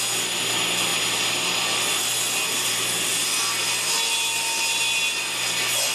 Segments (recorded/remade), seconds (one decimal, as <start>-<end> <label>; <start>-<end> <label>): 0.0-5.9 recorded

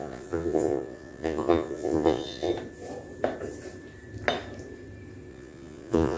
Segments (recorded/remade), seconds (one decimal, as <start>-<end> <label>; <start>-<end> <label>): 0.0-2.5 remade; 2.5-5.3 recorded; 5.3-6.2 remade

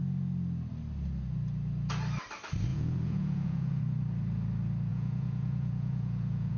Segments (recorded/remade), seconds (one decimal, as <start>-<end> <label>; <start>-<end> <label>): 0.0-2.7 recorded; 2.7-3.8 remade; 3.8-4.9 recorded; 4.9-6.6 remade

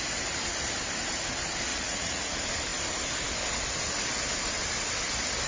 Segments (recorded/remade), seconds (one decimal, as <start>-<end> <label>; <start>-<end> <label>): 0.0-1.7 recorded; 1.7-2.2 remade; 2.2-5.5 recorded

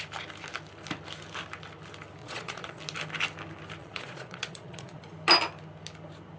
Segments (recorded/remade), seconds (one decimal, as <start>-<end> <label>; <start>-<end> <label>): 0.0-2.2 recorded; 2.2-2.8 remade; 2.8-3.8 recorded; 3.8-5.0 remade; 5.0-6.4 recorded

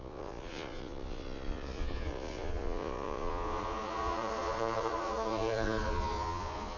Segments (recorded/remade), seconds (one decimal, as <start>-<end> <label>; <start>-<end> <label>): 0.0-6.8 remade

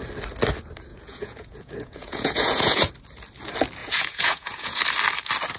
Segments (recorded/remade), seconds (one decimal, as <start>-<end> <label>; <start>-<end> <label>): 0.0-0.9 recorded; 0.9-2.9 remade; 2.9-3.8 recorded; 3.8-4.8 remade; 4.8-5.6 recorded

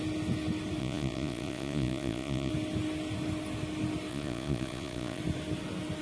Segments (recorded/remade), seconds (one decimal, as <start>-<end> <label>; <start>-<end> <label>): 0.0-0.8 recorded; 0.8-2.5 remade; 2.5-4.1 recorded; 4.1-5.2 remade; 5.2-6.0 recorded